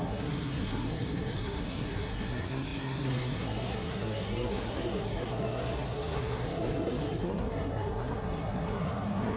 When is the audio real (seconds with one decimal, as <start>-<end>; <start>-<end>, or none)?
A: none